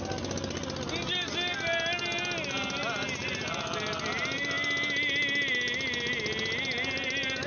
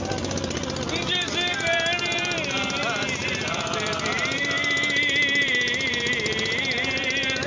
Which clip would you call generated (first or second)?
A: second